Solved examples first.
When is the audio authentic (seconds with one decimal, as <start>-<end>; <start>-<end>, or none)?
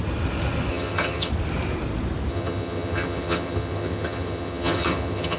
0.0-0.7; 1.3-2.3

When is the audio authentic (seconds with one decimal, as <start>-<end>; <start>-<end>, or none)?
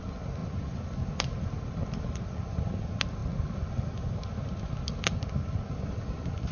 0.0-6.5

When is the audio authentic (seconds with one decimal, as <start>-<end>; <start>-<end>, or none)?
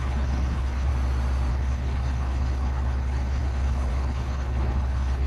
0.9-1.5